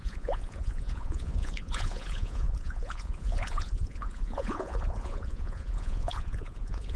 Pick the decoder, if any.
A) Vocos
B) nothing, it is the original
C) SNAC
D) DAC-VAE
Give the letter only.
A